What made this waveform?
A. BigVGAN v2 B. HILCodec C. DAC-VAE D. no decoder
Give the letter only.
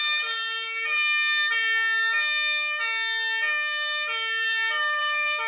D